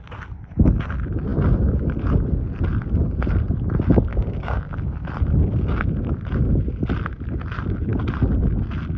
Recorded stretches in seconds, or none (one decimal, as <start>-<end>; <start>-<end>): 0.0-4.1; 4.6-9.0